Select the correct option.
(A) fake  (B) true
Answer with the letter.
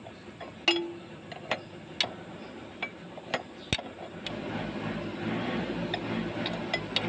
B